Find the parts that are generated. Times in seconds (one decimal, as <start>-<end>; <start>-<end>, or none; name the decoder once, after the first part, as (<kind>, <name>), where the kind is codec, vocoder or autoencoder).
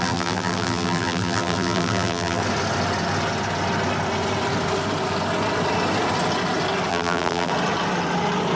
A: 0.0-2.4 (vocoder, BigVGAN v2); 6.9-7.5